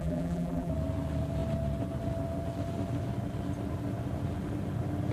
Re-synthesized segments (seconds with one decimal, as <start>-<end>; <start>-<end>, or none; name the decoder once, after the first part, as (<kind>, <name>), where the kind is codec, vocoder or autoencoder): 0.0-0.7 (vocoder, BigVGAN v2)